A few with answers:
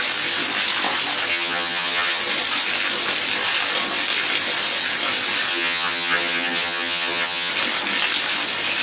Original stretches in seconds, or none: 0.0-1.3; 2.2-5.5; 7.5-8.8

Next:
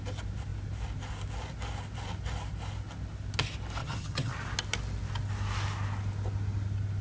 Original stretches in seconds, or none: 0.0-3.8; 4.3-7.0